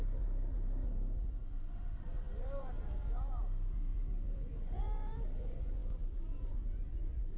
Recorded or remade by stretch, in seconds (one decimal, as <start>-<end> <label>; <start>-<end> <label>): 0.0-7.4 recorded